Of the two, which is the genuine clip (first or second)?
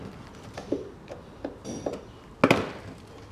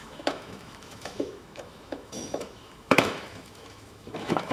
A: first